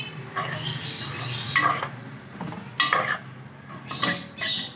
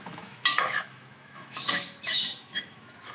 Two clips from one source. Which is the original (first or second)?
first